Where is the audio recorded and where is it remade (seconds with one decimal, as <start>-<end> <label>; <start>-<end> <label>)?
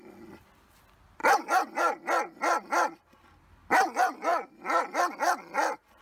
0.0-6.0 recorded